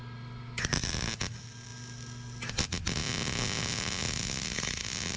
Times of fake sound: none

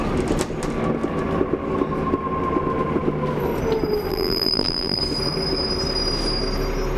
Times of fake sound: 4.1-5.0 (vocoder, BigVGAN v2)

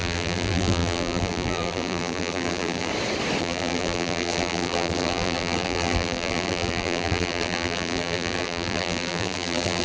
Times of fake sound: 0.0-2.9 (vocoder, BigVGAN v2); 3.4-9.8